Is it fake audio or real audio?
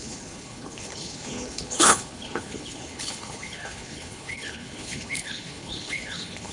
fake